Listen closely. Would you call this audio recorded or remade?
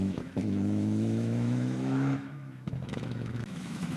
remade